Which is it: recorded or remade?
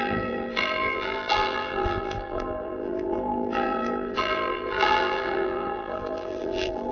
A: remade